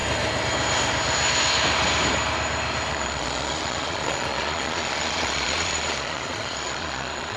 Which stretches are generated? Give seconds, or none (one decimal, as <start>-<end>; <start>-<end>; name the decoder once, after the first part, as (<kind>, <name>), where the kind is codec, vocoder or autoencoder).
2.9-7.4 (vocoder, Vocos)